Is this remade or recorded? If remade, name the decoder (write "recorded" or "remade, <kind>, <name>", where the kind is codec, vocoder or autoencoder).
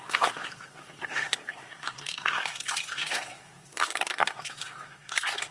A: remade, codec, SNAC